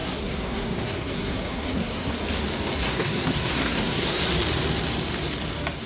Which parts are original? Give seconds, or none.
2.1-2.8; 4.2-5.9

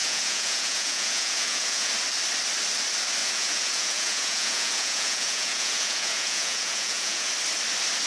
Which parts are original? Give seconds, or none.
1.9-3.2; 7.3-8.1

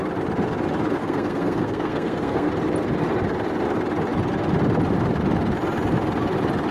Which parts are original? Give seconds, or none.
0.0-1.0; 2.5-6.7

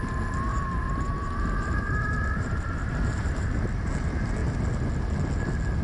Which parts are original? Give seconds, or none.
0.0-0.5; 3.9-5.8

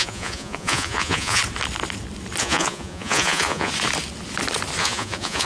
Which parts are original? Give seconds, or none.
1.4-2.4; 3.7-4.8